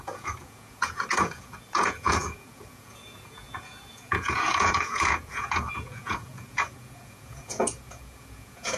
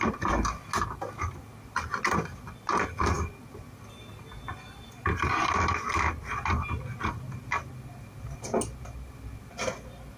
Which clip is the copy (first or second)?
first